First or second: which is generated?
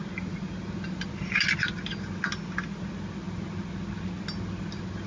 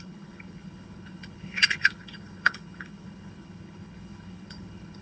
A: second